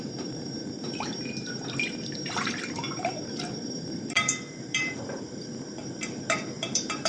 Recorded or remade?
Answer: remade